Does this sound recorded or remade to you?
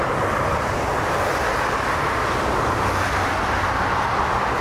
remade